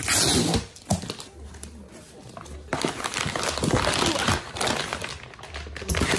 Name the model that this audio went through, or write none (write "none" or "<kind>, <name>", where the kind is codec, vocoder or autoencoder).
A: none